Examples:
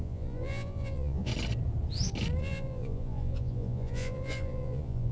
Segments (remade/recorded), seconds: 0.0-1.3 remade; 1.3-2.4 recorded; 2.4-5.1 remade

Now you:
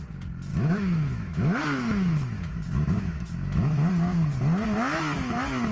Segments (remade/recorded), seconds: 0.0-0.5 recorded; 0.5-3.9 remade; 3.9-5.7 recorded